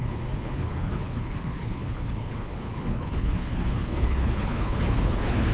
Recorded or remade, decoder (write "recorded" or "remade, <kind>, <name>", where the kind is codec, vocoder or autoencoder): remade, codec, HILCodec